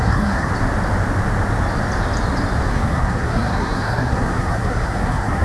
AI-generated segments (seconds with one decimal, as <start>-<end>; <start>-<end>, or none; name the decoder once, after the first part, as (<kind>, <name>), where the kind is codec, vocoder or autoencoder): 0.0-0.5 (codec, SNAC); 2.7-5.4